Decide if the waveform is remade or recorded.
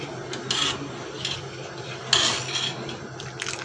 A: recorded